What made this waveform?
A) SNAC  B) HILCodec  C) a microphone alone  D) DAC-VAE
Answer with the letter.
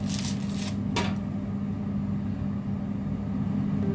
C